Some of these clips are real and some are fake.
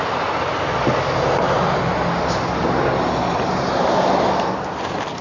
real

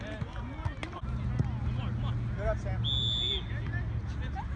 real